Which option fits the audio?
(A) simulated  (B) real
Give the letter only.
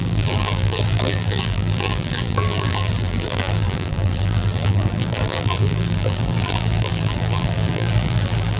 A